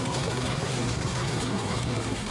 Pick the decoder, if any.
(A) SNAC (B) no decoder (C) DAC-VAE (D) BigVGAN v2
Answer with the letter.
A